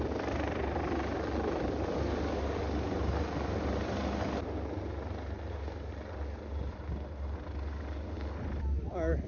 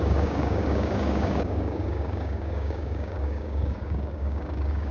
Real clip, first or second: first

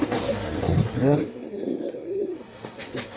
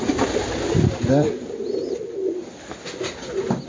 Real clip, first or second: second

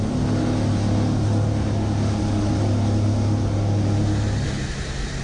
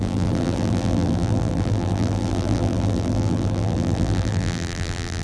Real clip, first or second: first